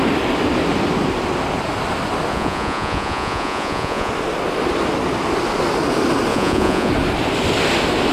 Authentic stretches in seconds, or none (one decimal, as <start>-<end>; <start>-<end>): 0.0-2.3; 4.1-6.3; 6.9-8.1